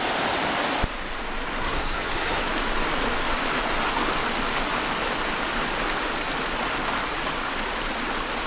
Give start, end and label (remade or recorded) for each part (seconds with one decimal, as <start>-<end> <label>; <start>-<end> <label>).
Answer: 0.0-1.6 recorded; 1.6-2.4 remade; 2.4-8.5 recorded